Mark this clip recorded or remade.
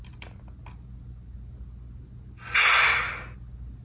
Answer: recorded